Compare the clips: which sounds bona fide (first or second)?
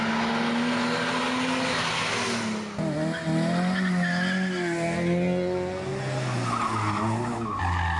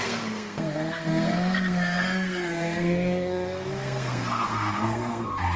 first